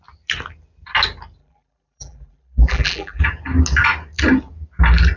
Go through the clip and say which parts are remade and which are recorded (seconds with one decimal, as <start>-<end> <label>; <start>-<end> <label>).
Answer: 0.0-1.4 recorded; 1.4-3.2 remade; 3.2-5.2 recorded

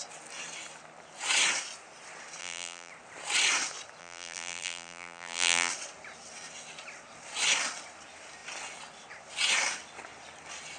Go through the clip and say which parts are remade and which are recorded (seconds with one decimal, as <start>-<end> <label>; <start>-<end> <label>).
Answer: 0.0-2.4 recorded; 2.4-2.9 remade; 2.9-4.0 recorded; 4.0-5.7 remade; 5.7-10.8 recorded

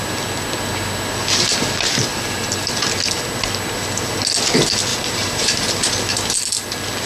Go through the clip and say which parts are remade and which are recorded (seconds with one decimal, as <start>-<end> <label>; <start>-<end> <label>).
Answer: 0.0-2.1 recorded; 2.1-2.7 remade; 2.7-4.9 recorded; 4.9-5.7 remade; 5.7-7.1 recorded

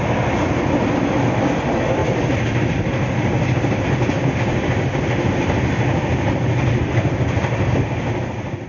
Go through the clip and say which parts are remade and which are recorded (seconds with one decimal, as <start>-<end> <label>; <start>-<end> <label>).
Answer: 0.0-8.7 recorded